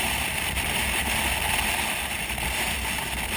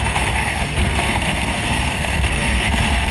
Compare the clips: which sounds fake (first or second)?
second